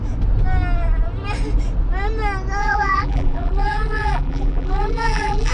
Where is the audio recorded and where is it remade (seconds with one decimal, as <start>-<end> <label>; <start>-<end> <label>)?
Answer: 0.0-2.6 recorded; 2.6-5.5 remade